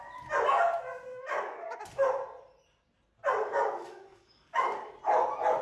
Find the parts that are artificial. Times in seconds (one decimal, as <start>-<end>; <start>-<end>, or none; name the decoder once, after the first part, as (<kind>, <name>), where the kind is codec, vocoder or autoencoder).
1.1-1.8 (codec, DAC); 3.4-5.0